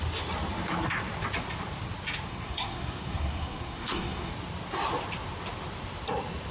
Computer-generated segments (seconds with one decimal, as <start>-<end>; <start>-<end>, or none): 2.3-4.3